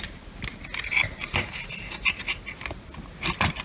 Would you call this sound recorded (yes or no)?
yes